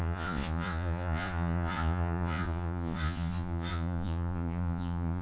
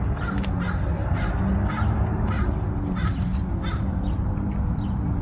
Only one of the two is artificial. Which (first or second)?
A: first